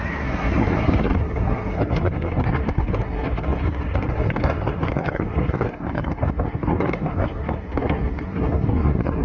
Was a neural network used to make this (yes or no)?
yes